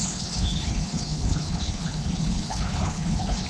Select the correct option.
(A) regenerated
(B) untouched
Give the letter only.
A